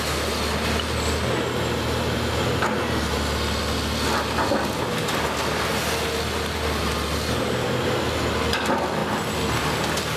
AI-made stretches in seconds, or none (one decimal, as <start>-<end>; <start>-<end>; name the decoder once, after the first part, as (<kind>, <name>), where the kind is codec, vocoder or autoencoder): none